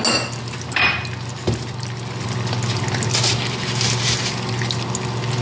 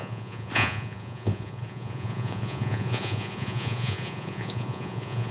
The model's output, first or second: second